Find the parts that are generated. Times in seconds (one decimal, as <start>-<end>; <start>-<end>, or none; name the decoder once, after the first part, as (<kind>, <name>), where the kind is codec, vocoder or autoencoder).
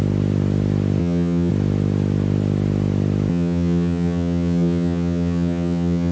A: 1.0-1.5 (vocoder, HiFi-GAN); 3.3-6.1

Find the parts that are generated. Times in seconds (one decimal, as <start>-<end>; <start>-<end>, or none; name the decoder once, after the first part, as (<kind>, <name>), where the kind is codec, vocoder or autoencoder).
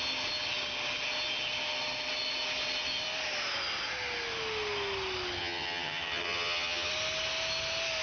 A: 5.4-6.9 (vocoder, HiFi-GAN)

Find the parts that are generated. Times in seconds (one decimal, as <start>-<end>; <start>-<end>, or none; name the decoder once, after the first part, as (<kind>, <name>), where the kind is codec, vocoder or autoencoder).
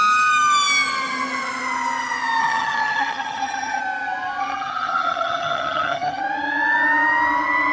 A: 2.4-3.8 (vocoder, HiFi-GAN); 4.4-6.2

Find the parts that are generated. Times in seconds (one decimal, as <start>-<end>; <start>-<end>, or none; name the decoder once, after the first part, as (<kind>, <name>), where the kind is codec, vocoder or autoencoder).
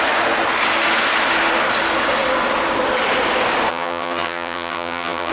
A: 3.7-5.3 (vocoder, HiFi-GAN)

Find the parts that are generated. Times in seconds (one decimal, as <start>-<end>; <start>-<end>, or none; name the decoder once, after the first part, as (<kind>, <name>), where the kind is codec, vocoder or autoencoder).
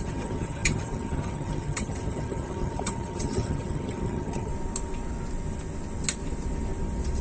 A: 0.0-4.5 (vocoder, HiFi-GAN)